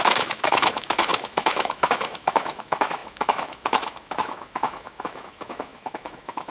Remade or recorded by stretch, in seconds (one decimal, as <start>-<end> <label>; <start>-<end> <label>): 0.0-6.5 remade